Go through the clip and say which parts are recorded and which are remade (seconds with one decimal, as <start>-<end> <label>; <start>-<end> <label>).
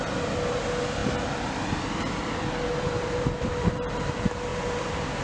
0.0-1.0 recorded; 1.0-4.0 remade; 4.0-4.5 recorded; 4.5-5.2 remade